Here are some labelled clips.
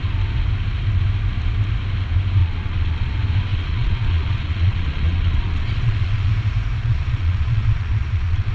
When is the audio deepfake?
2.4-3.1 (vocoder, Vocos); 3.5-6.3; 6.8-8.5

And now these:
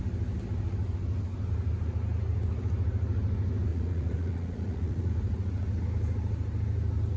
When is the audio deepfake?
3.7-5.1 (vocoder, Vocos)

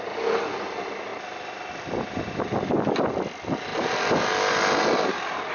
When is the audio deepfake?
none

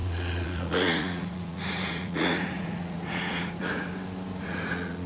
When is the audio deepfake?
0.0-3.9 (vocoder, Vocos); 4.4-5.1

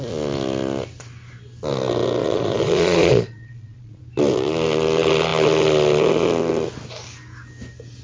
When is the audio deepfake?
2.2-4.0 (vocoder, Vocos)

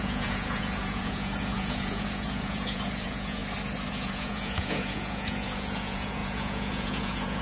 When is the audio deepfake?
0.0-3.4 (vocoder, Vocos); 3.9-7.4